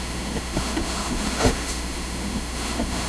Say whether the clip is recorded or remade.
remade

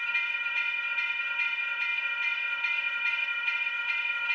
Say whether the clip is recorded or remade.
remade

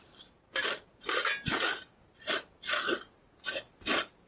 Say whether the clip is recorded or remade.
recorded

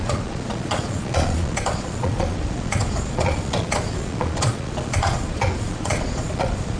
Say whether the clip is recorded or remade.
remade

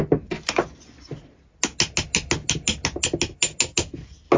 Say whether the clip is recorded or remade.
recorded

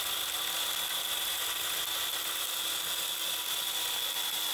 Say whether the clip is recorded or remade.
recorded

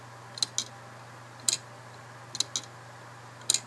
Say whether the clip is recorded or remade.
recorded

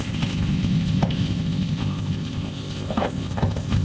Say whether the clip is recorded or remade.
remade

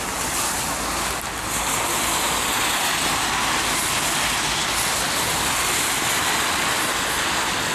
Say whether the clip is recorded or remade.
recorded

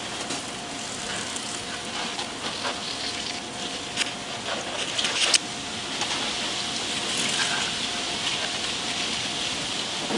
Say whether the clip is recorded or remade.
recorded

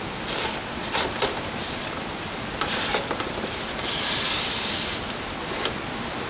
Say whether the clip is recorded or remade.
recorded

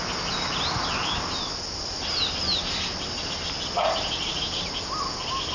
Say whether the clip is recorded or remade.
recorded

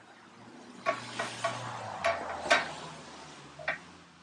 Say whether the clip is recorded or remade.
recorded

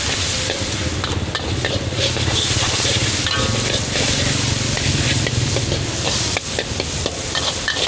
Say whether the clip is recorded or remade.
recorded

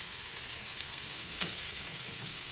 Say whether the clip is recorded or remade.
remade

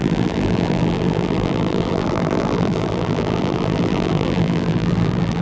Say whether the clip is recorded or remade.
remade